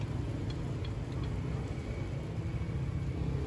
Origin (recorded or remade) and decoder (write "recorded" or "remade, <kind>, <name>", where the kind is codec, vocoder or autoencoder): recorded